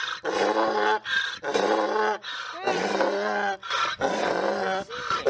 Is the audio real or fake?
real